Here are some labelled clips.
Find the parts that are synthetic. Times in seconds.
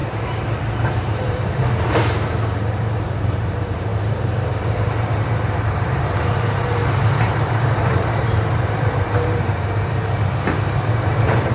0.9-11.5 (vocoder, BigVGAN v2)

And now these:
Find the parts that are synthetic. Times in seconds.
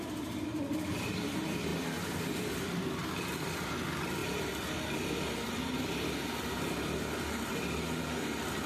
none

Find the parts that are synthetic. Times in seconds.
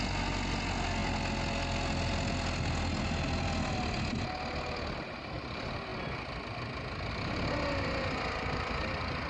none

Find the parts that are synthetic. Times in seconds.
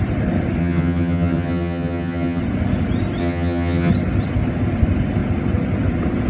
0.6-2.4 (vocoder, HiFi-GAN); 3.2-3.9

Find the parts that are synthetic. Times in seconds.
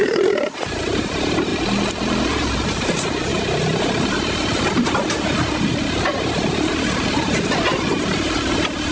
0.0-1.5 (vocoder, BigVGAN v2); 2.3-8.9